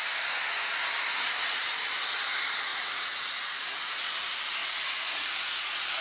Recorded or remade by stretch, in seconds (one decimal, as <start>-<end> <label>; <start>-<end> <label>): 0.0-2.7 recorded; 2.7-4.1 remade; 4.1-4.6 recorded; 4.6-6.0 remade